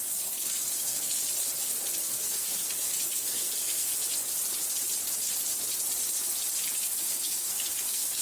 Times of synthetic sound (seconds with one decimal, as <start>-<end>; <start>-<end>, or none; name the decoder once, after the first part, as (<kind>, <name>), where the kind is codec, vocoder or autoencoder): 0.0-1.2 (codec, SNAC); 2.0-3.9; 7.0-8.2